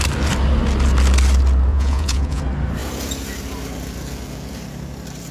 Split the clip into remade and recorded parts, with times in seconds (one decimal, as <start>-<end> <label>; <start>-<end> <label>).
0.0-1.7 recorded; 1.7-2.4 remade; 2.4-5.3 recorded